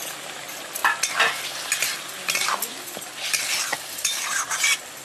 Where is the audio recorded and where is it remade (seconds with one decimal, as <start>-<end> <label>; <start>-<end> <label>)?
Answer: 0.0-0.8 remade; 0.8-3.8 recorded; 3.8-5.0 remade